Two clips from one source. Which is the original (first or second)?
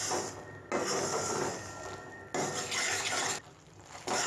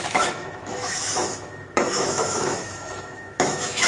first